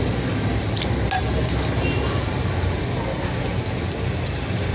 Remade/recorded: recorded